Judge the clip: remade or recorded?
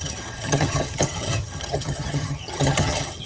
remade